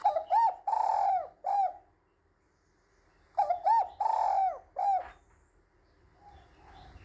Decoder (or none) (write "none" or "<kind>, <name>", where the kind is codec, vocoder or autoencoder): none